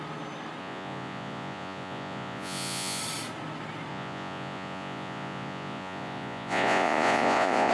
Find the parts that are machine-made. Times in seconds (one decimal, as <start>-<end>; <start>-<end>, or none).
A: 0.6-3.0; 3.9-7.7